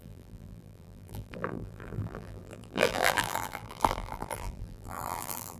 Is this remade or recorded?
remade